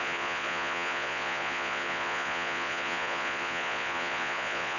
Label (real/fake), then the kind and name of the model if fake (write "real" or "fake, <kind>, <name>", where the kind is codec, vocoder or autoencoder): fake, vocoder, Vocos